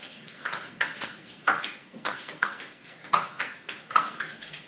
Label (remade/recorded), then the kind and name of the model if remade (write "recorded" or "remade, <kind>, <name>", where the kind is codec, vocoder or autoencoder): remade, codec, SNAC